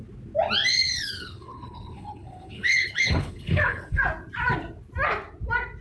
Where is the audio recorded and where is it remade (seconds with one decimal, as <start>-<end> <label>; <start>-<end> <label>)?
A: 0.0-0.7 recorded; 0.7-4.0 remade; 4.0-5.8 recorded